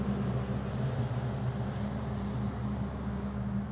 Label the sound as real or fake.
real